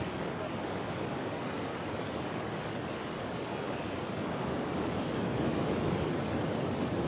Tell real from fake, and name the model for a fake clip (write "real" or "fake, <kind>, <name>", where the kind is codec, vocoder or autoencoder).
fake, codec, DAC